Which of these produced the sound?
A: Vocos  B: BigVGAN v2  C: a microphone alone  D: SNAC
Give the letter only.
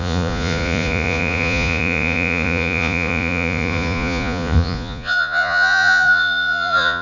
A